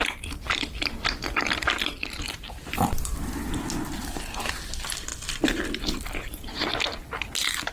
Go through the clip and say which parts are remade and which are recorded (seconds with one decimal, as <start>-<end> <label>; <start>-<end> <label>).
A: 0.0-7.7 recorded